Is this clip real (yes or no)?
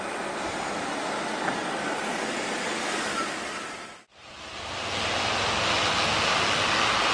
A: yes